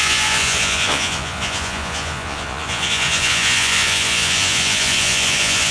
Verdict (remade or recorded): remade